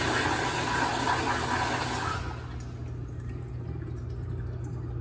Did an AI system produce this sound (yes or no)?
no